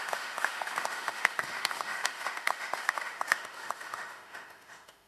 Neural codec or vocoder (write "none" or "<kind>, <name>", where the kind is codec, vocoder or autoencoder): autoencoder, DAC-VAE